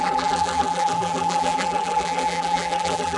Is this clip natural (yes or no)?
no